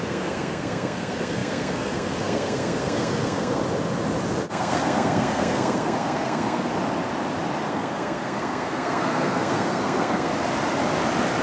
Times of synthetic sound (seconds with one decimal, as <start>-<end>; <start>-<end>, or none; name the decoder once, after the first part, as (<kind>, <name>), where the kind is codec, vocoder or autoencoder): 0.0-3.6 (codec, SNAC); 4.5-6.7; 7.7-10.3

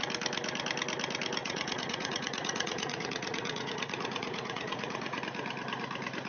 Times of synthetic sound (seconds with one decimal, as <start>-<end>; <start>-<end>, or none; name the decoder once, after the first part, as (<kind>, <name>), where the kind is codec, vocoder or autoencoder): 1.4-5.2 (vocoder, Vocos)

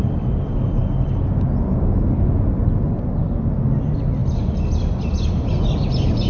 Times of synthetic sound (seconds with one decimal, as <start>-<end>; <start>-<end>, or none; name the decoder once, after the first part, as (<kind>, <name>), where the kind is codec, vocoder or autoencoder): none

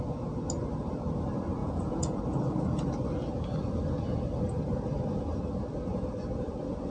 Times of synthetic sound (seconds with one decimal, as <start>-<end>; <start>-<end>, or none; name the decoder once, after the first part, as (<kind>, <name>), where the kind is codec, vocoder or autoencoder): 1.6-2.2 (vocoder, Vocos)

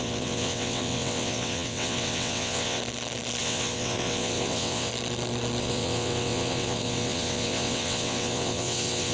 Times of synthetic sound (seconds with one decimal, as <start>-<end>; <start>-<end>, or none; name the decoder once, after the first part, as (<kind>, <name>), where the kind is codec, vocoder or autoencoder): 0.0-2.8 (vocoder, WaveNeXt); 3.4-4.9; 5.6-9.1

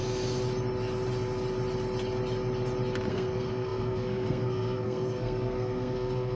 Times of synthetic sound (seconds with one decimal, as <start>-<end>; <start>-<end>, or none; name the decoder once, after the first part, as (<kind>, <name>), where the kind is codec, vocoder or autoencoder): 3.1-6.3 (codec, SNAC)

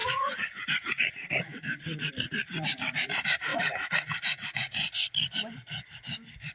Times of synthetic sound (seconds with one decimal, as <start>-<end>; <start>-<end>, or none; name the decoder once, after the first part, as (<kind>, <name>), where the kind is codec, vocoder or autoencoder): 0.0-2.1 (vocoder, Vocos); 3.5-4.8

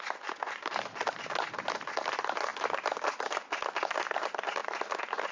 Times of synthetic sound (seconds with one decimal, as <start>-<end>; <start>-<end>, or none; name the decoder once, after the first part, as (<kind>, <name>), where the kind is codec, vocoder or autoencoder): none